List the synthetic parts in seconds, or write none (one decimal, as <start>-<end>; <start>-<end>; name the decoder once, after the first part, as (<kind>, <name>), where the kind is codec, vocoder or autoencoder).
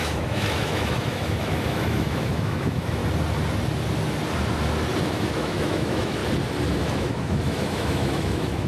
0.0-3.0 (autoencoder, DAC-VAE); 5.0-6.2; 6.7-8.7